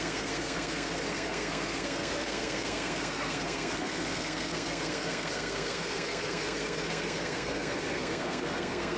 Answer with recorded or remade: remade